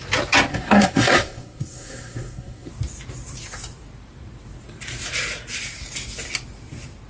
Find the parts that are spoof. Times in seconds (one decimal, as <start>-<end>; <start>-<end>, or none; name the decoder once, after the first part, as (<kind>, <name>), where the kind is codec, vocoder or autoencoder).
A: 0.5-2.7 (codec, SNAC)